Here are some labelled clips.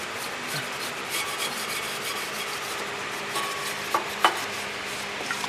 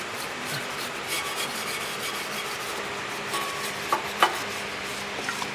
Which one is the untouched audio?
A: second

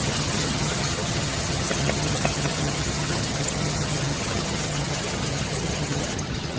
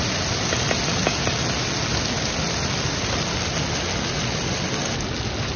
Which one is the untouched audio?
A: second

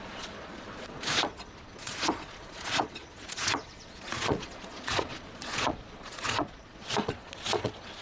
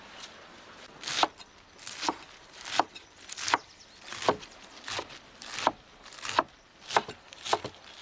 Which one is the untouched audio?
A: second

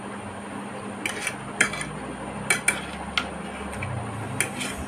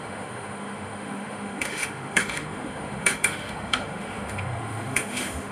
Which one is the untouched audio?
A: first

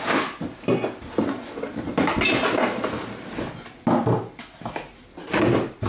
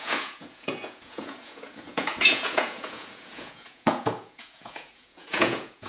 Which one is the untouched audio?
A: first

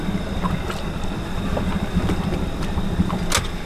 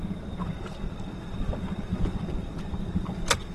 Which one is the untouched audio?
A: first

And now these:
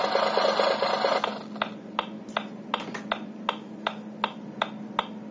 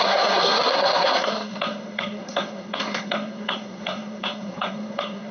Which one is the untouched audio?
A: first